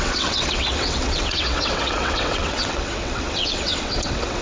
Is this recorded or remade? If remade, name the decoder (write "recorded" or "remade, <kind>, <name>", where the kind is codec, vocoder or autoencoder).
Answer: remade, vocoder, WaveNeXt